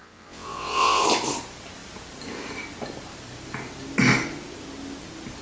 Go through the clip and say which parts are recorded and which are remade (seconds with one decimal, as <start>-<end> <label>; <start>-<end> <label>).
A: 0.0-1.0 remade; 1.0-5.4 recorded